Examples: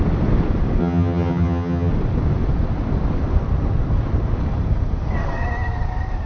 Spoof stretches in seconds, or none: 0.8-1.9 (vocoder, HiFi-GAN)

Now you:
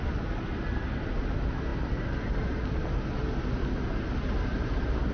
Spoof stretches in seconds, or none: none

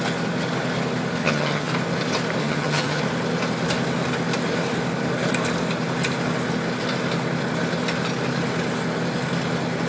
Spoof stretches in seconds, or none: 1.2-1.7 (vocoder, HiFi-GAN); 2.4-3.0

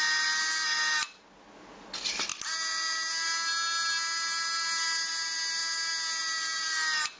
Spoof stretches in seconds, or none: none

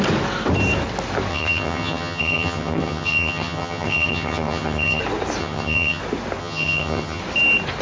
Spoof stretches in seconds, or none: 1.3-5.0 (vocoder, HiFi-GAN); 5.4-6.0; 6.4-7.2